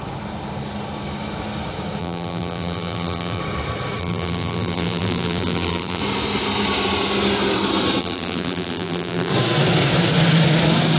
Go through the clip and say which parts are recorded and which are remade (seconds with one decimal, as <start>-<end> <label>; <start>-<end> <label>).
0.0-2.0 recorded; 2.0-3.4 remade; 3.4-4.0 recorded; 4.0-6.0 remade; 6.0-8.0 recorded; 8.0-9.3 remade; 9.3-11.0 recorded